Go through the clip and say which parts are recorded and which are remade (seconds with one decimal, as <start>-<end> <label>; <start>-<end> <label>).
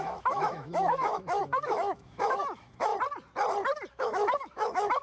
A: 0.0-2.9 remade; 2.9-3.9 recorded; 3.9-5.0 remade